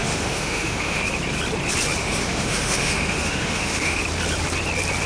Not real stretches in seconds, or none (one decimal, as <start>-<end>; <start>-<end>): 0.0-1.0; 2.0-4.0

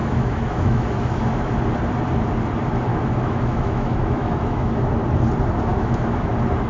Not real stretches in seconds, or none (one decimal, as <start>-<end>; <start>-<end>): 0.0-1.5; 2.9-4.7; 5.7-6.3

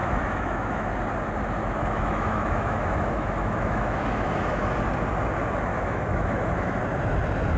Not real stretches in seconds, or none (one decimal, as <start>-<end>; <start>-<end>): 0.0-0.9; 1.6-4.8; 5.7-6.8

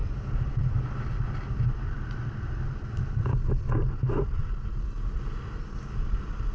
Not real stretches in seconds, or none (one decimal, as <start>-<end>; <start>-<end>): none

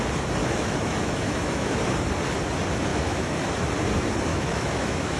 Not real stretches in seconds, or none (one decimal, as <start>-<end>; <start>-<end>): 0.4-1.7; 2.9-3.5; 4.3-5.2

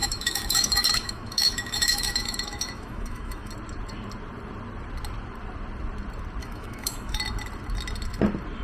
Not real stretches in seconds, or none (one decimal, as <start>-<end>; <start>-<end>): 0.0-3.5; 6.4-7.2

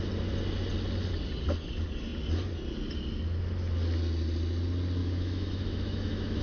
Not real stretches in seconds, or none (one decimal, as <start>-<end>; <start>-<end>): 5.0-6.4

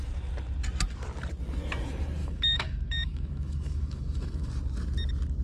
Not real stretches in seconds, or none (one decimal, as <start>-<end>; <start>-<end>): 2.2-4.5